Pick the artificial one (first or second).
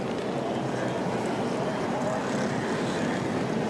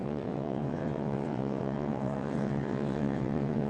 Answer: second